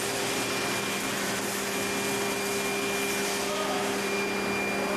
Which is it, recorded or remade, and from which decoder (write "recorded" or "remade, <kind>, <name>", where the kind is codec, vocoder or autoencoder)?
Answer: recorded